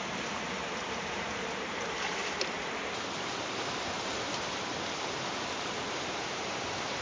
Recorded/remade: remade